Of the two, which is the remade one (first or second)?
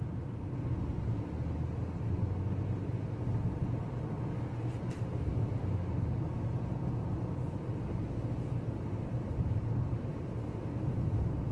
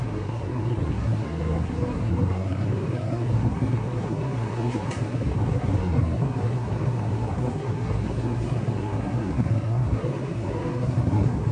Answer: second